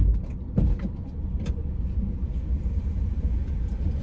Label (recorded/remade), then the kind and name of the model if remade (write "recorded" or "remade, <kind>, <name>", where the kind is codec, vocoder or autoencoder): recorded